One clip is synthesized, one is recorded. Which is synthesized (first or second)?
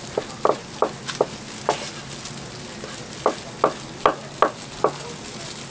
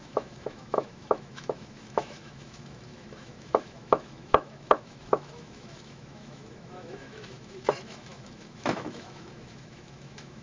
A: second